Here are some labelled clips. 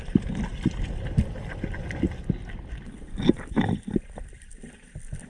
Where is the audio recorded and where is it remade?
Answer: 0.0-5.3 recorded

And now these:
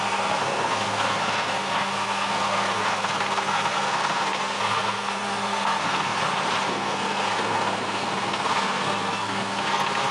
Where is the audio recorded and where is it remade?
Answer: 0.0-6.2 remade; 6.2-6.7 recorded; 6.7-10.1 remade

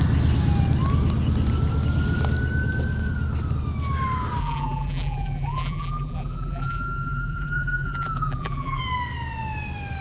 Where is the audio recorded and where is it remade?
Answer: 0.0-4.4 recorded; 4.4-8.8 remade; 8.8-10.0 recorded